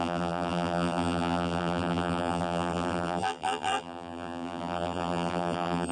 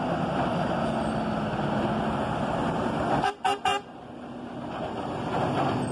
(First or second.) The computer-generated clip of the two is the first